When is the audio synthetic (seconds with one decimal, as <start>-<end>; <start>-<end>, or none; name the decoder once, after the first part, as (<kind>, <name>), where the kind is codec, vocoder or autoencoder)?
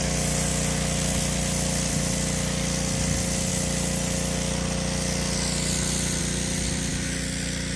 none